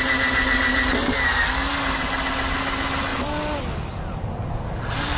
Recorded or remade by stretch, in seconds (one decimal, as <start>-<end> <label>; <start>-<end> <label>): 0.0-5.2 recorded